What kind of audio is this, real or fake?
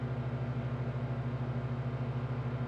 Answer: real